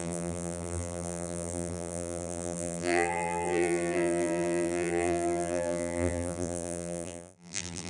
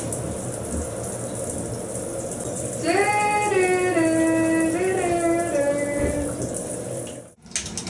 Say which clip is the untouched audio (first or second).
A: second